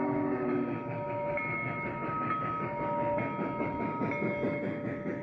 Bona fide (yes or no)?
yes